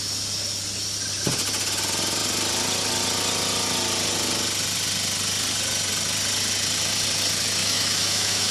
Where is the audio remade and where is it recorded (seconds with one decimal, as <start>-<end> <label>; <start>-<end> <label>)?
0.0-7.6 recorded; 7.6-8.5 remade